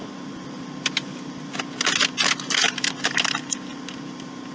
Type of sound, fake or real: real